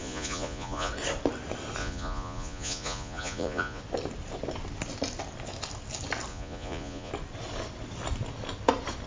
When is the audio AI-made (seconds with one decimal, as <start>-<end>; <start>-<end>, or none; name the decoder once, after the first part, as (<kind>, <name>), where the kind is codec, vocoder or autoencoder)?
0.0-0.9 (vocoder, Vocos); 1.8-3.8; 6.3-7.1